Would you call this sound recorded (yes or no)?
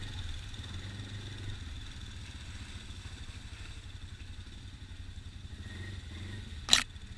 yes